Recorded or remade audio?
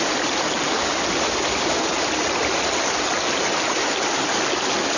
recorded